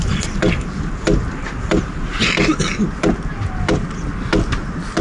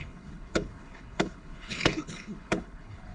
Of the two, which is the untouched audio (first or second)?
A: first